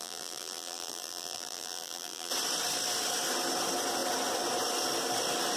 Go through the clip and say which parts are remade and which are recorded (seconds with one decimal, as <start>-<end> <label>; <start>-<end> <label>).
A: 0.0-2.3 remade; 2.3-5.6 recorded